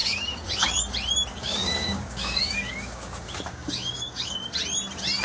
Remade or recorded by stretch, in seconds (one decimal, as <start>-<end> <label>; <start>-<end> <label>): 0.0-0.8 remade; 0.8-1.3 recorded; 1.3-4.4 remade; 4.4-5.2 recorded